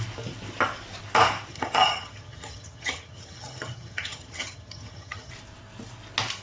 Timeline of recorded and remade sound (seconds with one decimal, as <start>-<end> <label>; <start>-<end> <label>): 0.0-1.5 recorded; 1.5-5.3 remade; 5.3-6.4 recorded